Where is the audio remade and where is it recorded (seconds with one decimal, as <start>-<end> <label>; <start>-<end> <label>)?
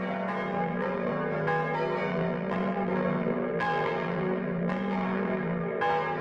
0.0-0.5 recorded; 0.5-1.1 remade; 1.1-2.1 recorded; 2.1-5.8 remade; 5.8-6.2 recorded